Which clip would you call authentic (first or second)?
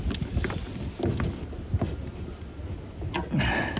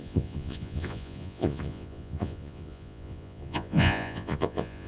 first